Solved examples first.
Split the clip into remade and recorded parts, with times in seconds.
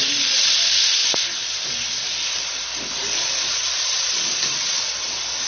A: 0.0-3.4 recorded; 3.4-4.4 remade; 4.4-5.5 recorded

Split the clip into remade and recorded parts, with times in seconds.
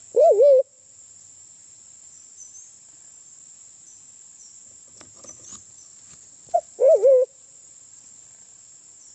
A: 0.0-9.1 recorded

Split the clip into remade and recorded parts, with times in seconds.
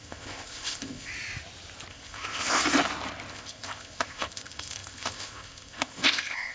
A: 0.0-1.1 remade; 1.1-1.9 recorded; 1.9-2.6 remade; 2.6-3.3 recorded; 3.3-6.5 remade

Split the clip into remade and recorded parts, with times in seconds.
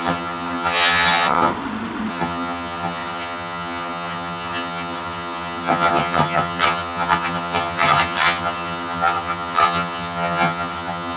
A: 0.0-1.5 remade; 1.5-2.1 recorded; 2.1-11.2 remade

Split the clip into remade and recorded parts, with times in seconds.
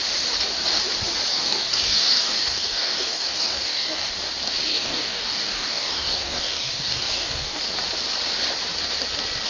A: 0.0-1.3 recorded; 1.3-4.1 remade; 4.1-4.7 recorded; 4.7-7.6 remade; 7.6-9.5 recorded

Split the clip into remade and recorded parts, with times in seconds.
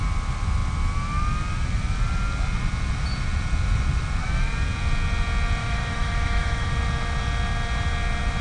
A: 0.0-5.6 recorded; 5.6-6.7 remade; 6.7-8.4 recorded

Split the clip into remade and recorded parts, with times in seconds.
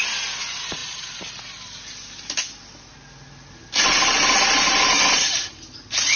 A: 0.0-6.2 recorded